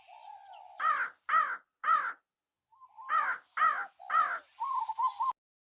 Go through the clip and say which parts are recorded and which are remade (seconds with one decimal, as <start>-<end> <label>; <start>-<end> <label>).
0.0-5.7 recorded